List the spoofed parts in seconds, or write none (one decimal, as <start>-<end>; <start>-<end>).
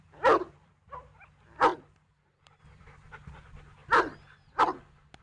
none